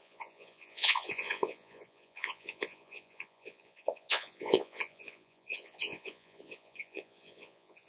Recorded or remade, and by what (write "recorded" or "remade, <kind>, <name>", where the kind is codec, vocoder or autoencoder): remade, vocoder, Vocos